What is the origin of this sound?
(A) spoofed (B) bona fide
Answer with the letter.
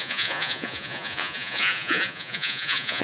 A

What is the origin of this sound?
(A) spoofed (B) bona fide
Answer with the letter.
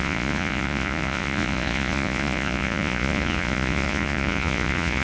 A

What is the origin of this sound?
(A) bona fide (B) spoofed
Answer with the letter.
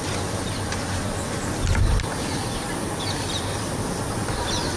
A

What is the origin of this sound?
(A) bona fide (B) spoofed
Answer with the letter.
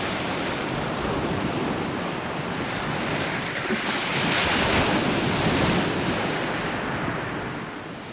A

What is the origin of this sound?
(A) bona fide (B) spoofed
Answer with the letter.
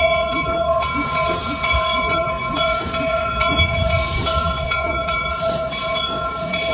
B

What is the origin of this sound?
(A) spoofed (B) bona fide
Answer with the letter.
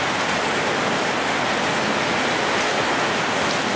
B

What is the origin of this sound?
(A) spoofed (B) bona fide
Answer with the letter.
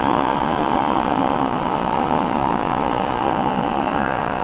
A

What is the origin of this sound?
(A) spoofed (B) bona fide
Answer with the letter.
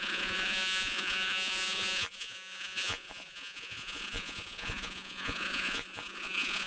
A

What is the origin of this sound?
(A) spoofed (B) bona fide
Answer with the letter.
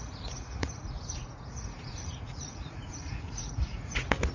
A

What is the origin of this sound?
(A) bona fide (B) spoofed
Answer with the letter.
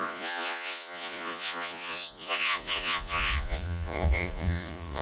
B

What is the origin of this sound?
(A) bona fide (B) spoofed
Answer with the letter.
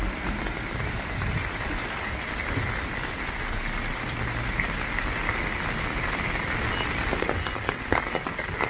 A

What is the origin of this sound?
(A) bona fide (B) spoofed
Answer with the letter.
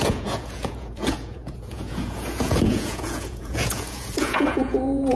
B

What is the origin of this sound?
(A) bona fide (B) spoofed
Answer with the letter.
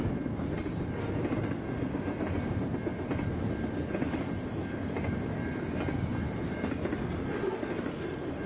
A